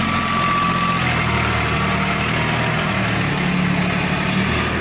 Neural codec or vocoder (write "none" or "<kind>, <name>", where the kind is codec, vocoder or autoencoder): none